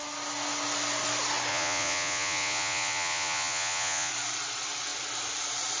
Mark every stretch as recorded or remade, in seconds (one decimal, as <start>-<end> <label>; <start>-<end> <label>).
0.0-1.5 recorded; 1.5-4.1 remade; 4.1-5.8 recorded